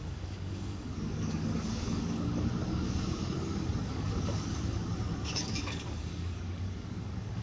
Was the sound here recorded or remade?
remade